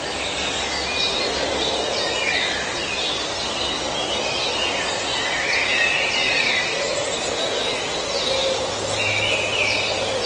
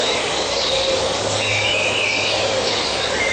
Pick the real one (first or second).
first